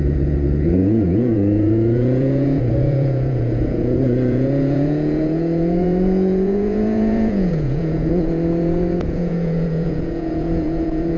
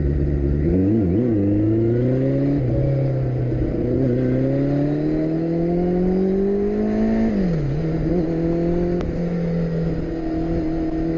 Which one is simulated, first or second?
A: first